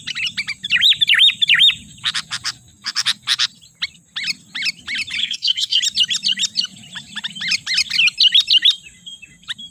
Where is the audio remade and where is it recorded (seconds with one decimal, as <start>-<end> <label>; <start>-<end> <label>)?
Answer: 0.0-5.2 recorded; 5.2-5.8 remade; 5.8-9.7 recorded